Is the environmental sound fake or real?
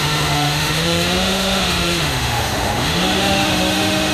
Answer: fake